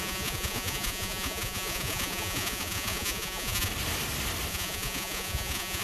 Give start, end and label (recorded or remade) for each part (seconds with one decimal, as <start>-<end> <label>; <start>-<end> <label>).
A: 0.0-3.7 remade; 3.7-4.5 recorded; 4.5-5.8 remade